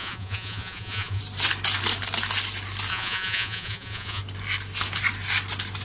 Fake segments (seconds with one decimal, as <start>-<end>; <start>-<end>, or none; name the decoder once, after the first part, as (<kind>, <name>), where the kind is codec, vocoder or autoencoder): 0.0-1.2 (vocoder, Vocos); 2.9-4.2